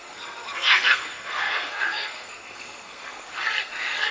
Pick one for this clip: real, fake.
fake